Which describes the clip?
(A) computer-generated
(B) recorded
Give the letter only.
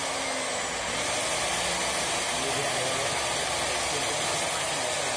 B